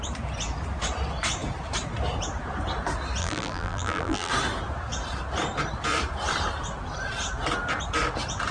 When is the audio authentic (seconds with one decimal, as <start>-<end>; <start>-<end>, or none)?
0.0-3.2; 4.3-8.5